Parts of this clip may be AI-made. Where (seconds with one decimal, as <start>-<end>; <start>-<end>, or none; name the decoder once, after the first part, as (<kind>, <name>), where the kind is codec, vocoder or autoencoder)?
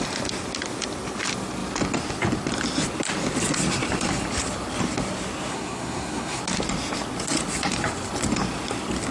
5.5-6.4 (codec, SNAC)